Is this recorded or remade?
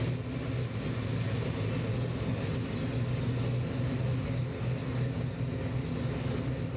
recorded